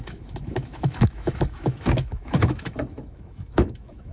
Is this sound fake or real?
fake